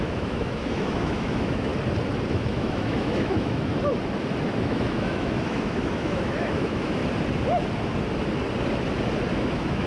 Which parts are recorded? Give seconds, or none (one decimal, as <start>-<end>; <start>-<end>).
1.7-2.3; 3.7-4.6; 7.0-9.3